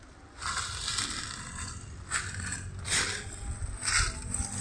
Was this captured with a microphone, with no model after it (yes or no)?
yes